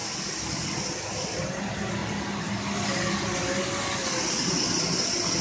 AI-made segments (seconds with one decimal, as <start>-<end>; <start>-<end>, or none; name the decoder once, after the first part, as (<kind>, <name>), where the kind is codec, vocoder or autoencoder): none